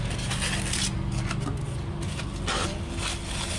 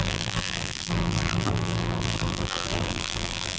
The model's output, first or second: second